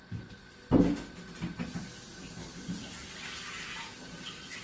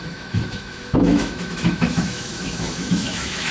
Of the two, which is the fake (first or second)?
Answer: second